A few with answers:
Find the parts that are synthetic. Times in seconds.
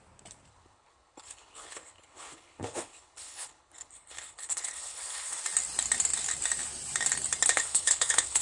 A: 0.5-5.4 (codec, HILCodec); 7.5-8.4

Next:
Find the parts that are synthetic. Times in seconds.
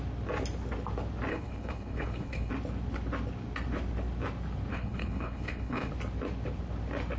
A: 1.3-2.5 (codec, HILCodec); 4.7-5.9